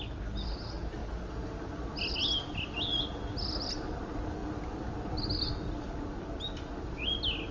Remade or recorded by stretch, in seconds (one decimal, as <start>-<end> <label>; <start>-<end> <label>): 0.0-7.5 recorded